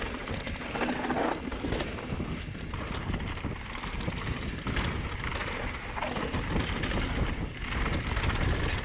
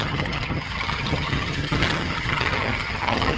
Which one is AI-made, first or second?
second